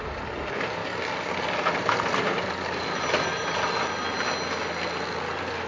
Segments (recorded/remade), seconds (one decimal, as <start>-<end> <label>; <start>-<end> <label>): 0.0-5.7 recorded